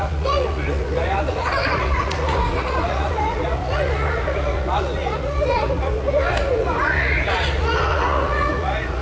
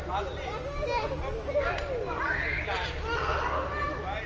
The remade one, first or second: first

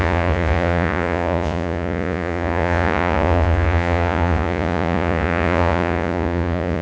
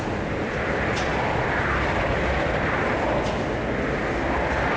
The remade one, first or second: first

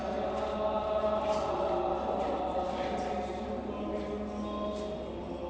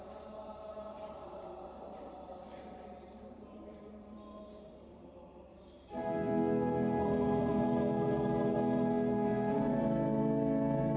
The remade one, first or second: second